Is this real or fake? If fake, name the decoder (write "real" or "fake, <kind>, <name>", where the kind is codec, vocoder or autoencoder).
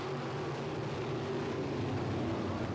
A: real